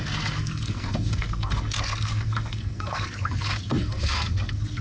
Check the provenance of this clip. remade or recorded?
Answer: remade